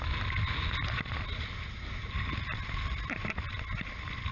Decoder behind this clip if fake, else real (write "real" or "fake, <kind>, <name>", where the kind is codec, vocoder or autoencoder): real